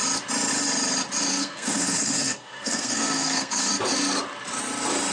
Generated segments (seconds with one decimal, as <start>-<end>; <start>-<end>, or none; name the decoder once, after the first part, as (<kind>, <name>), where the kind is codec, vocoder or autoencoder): 1.3-3.7 (codec, SNAC)